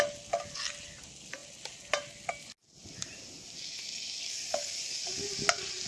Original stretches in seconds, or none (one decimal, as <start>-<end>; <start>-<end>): 0.0-5.9